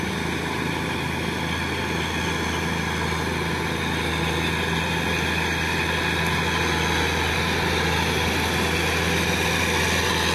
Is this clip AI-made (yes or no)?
no